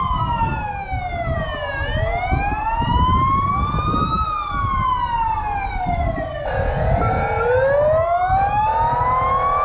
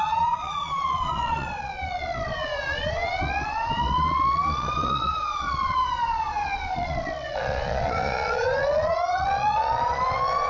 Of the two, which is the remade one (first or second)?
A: second